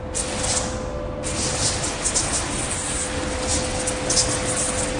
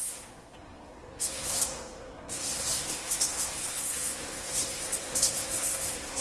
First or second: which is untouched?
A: first